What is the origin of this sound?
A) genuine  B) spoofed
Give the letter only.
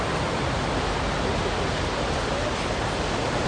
A